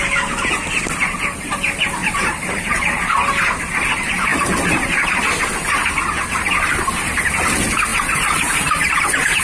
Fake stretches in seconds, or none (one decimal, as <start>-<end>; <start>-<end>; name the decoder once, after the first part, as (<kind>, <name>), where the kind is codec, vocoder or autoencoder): 2.0-3.0 (vocoder, BigVGAN v2); 7.9-9.0